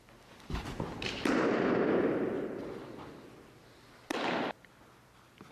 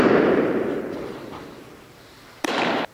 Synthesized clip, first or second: second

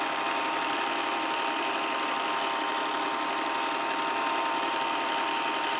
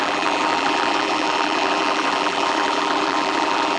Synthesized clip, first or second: second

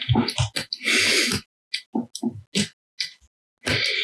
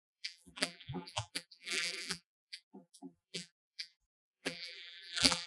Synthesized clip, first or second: second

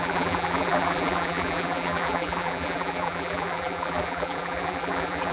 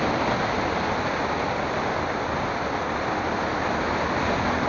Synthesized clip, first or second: first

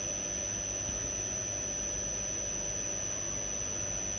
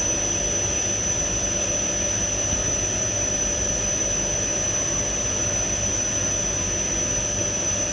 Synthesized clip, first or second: second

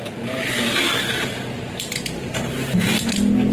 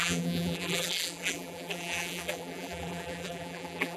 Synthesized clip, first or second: second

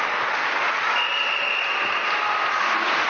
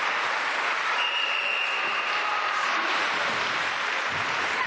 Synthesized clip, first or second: second